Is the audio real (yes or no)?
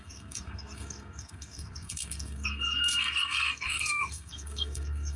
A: no